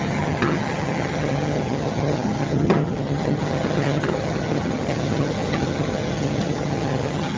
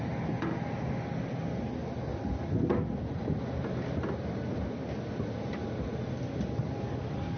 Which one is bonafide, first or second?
second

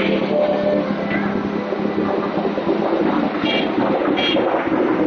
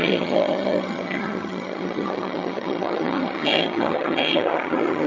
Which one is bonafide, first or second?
first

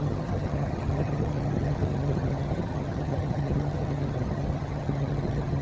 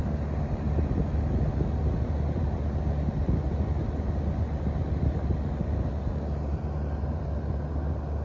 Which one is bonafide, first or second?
second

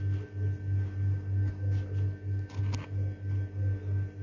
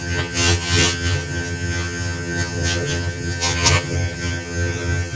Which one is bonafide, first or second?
first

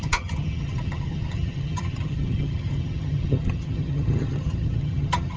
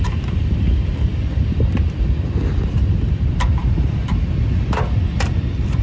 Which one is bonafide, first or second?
second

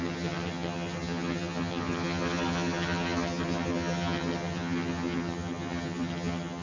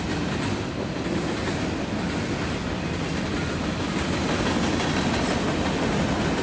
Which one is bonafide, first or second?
second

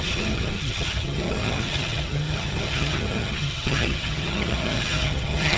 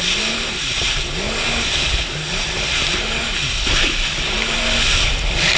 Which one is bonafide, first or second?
second